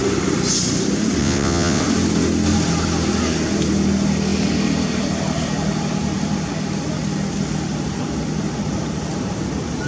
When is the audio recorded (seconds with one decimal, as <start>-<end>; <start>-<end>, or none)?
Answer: 0.0-1.2; 1.8-9.9